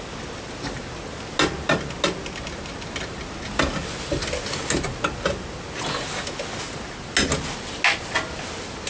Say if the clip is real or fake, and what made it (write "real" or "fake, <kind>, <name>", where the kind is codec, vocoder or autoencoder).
real